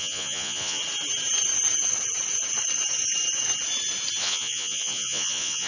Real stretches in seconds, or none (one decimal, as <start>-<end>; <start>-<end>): 0.8-4.2